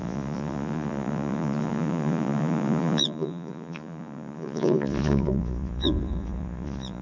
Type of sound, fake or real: fake